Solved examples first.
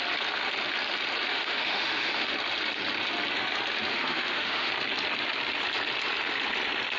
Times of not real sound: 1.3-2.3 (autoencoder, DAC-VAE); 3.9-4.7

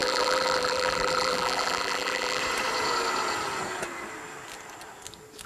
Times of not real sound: 0.0-2.4 (vocoder, BigVGAN v2)

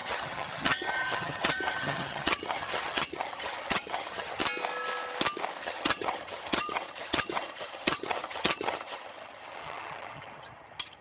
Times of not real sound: 0.0-4.4 (vocoder, HiFi-GAN); 5.6-11.0

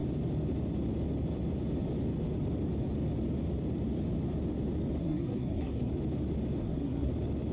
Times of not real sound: 5.0-5.9 (codec, SNAC); 6.6-7.1